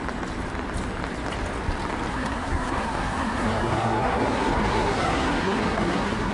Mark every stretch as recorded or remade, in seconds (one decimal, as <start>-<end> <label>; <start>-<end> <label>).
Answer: 0.0-2.1 recorded; 2.1-6.3 remade